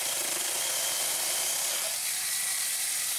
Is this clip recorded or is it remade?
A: remade